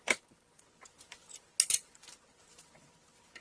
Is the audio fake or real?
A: real